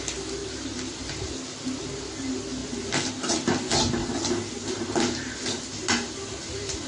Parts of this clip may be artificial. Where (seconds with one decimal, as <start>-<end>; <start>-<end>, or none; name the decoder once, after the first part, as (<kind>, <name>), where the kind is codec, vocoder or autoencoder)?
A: 0.4-1.8 (vocoder, BigVGAN v2); 4.0-6.9